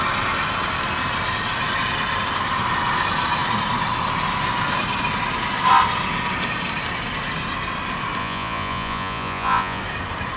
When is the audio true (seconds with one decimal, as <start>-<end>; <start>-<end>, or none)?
0.0-8.2; 9.8-10.4